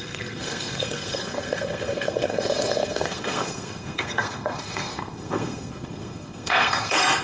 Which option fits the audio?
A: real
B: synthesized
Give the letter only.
B